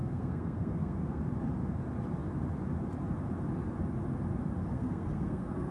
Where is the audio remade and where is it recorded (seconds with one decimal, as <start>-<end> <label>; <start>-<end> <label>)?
0.0-1.2 remade; 1.2-4.7 recorded; 4.7-5.7 remade